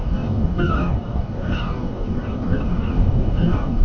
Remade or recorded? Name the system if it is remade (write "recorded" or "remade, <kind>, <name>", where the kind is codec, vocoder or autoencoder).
remade, codec, DAC